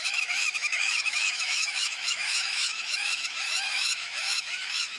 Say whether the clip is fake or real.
fake